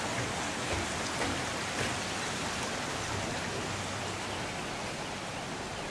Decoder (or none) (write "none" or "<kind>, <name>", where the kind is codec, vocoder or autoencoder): none